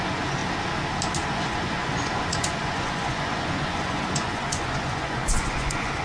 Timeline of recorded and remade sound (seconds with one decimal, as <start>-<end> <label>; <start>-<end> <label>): 0.0-0.4 remade; 0.4-1.3 recorded; 1.3-6.0 remade